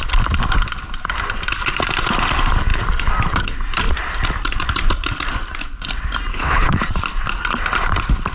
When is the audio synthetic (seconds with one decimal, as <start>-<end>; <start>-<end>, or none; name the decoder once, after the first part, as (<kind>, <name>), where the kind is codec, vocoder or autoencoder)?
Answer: 6.3-6.8 (codec, HILCodec)